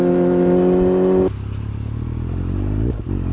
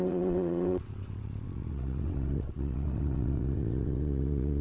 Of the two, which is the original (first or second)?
first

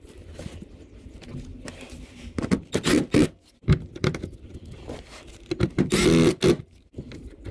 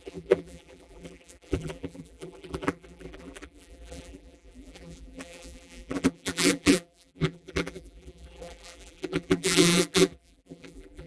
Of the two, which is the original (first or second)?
first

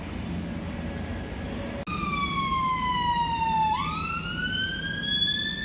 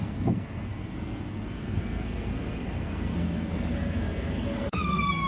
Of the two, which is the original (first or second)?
first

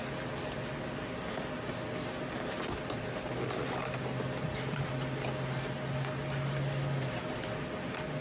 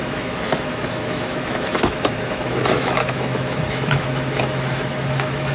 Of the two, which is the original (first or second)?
first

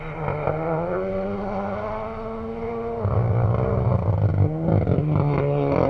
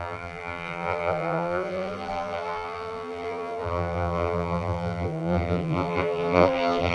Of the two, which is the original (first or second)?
first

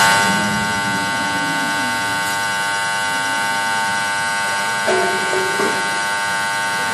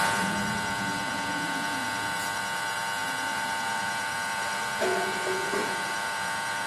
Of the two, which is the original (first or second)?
first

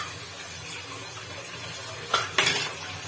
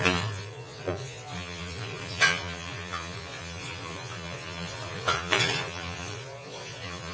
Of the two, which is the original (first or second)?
first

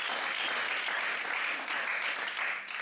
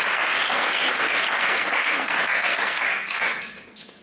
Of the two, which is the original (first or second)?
first